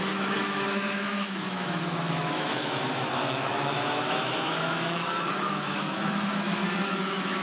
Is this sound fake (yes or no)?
yes